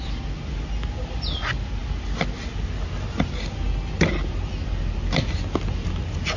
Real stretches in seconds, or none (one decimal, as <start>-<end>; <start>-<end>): 0.0-6.4